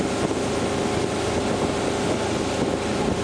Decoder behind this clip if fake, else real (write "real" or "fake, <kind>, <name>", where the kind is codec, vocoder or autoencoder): real